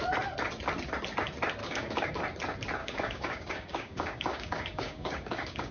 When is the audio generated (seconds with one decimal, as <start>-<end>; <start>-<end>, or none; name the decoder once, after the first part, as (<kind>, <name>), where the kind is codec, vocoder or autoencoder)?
1.6-2.2 (codec, DAC); 2.8-5.7